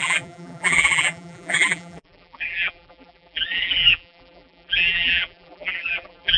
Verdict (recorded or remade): remade